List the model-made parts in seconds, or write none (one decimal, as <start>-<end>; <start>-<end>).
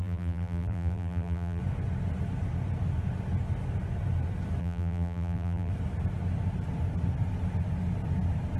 0.0-1.6; 4.6-5.7